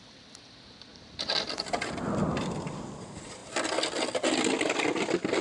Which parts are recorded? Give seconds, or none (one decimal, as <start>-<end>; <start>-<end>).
0.0-5.4